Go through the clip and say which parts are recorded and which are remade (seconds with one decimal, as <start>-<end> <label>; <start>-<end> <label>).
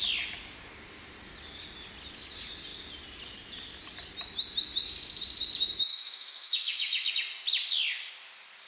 0.0-5.9 recorded; 5.9-7.1 remade; 7.1-8.7 recorded